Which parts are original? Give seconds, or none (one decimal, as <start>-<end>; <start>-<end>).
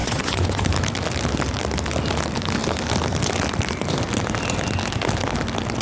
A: 0.6-5.8